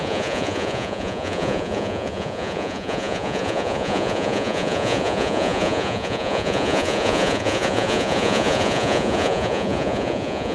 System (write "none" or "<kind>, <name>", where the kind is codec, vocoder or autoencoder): vocoder, Vocos